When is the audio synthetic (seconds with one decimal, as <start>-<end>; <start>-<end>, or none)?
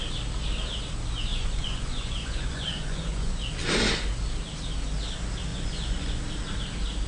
1.3-3.3; 5.5-6.2